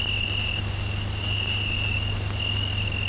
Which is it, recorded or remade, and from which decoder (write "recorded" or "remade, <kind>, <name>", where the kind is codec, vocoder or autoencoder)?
recorded